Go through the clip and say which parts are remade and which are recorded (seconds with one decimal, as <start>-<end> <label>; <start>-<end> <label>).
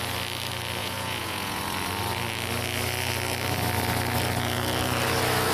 0.0-0.8 recorded; 0.8-1.6 remade; 1.6-5.5 recorded